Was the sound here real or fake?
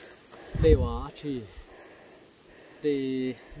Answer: real